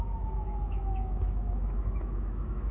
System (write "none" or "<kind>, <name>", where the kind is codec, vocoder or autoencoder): autoencoder, DAC-VAE